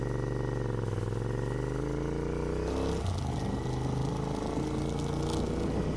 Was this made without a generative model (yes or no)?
yes